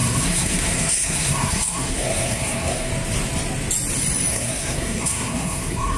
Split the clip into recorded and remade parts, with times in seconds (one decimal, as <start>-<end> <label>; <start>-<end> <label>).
0.0-2.9 remade; 2.9-4.3 recorded; 4.3-6.0 remade